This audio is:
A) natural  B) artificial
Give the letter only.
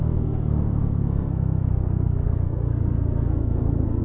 B